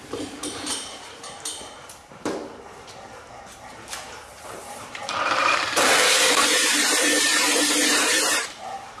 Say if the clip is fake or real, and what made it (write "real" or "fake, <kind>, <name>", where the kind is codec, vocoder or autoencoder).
fake, vocoder, BigVGAN v2